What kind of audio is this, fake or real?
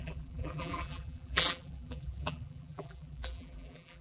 fake